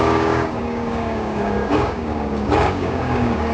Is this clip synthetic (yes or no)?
yes